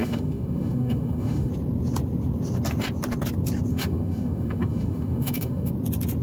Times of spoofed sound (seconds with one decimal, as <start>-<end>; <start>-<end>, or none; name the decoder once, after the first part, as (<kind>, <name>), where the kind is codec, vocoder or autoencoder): 0.0-1.5 (autoencoder, DAC-VAE); 3.7-5.7